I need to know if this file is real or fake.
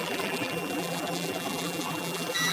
fake